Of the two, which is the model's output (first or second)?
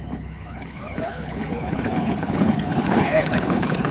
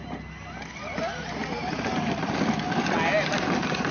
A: first